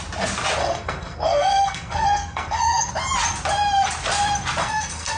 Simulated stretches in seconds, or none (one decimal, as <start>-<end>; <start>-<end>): 0.6-2.9; 4.6-5.2